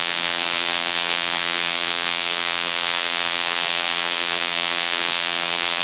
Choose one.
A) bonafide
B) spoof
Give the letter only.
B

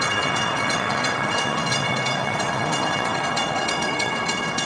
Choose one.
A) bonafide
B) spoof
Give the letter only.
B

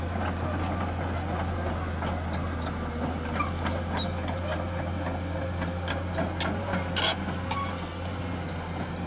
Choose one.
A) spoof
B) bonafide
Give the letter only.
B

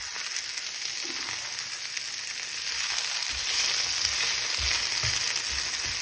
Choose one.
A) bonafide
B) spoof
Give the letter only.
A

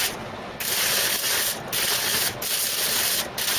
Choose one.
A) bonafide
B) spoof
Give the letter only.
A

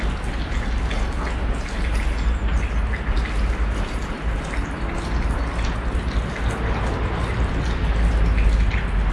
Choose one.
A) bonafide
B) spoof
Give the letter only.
A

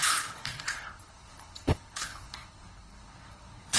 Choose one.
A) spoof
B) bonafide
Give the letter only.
A